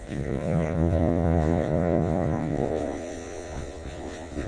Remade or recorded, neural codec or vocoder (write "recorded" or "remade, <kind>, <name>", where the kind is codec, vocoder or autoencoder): remade, vocoder, Vocos